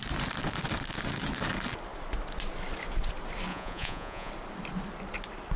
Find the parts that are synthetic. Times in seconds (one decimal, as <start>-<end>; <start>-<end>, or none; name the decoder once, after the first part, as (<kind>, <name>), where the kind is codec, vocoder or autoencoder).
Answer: 3.5-4.3 (vocoder, Vocos)